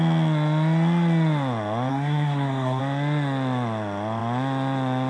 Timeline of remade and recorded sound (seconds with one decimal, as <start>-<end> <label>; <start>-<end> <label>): 0.0-1.9 recorded; 1.9-2.8 remade; 2.8-5.1 recorded